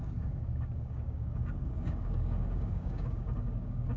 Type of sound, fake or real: fake